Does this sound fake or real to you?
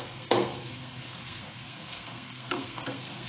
fake